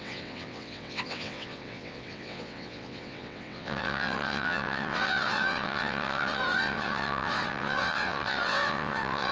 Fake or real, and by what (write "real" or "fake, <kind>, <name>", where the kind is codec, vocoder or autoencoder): fake, vocoder, WaveNeXt